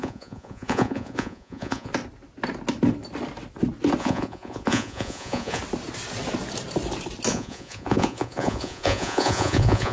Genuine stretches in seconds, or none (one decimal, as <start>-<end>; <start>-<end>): 1.9-4.0; 5.6-7.3